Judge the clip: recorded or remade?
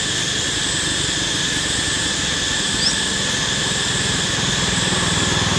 recorded